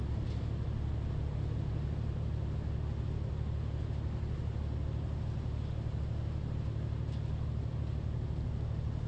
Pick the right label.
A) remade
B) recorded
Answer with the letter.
B